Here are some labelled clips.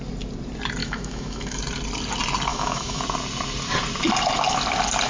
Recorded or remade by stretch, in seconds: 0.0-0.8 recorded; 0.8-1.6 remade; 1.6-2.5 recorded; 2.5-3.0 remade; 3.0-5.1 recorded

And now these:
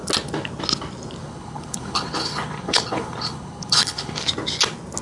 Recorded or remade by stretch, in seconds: 0.0-1.2 recorded; 1.2-4.2 remade; 4.2-5.0 recorded

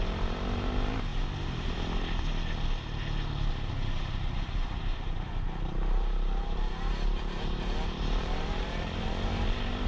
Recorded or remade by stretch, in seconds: 0.0-1.1 remade; 1.1-3.5 recorded; 3.5-9.9 remade

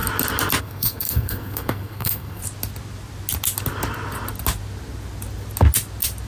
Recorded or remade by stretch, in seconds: 0.0-0.6 recorded; 0.6-2.4 remade; 2.4-6.3 recorded

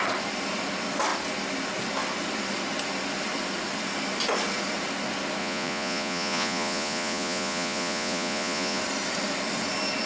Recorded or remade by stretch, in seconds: 0.0-5.4 recorded; 5.4-8.8 remade; 8.8-10.1 recorded